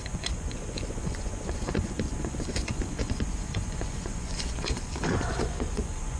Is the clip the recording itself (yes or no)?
no